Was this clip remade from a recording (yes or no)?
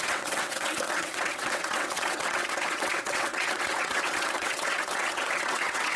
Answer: yes